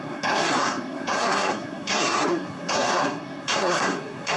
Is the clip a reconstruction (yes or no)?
yes